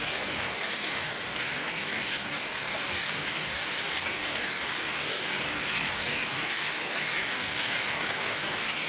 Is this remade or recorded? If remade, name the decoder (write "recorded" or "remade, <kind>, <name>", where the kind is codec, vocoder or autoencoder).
remade, codec, DAC